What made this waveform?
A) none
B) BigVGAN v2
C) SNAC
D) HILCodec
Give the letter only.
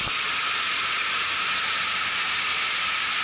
A